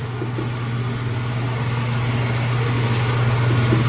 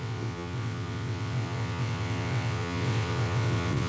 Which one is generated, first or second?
second